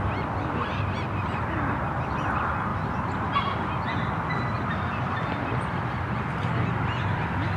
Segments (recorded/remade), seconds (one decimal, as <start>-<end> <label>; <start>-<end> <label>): 0.0-7.6 recorded